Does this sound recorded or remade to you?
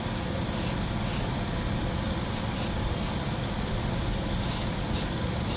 remade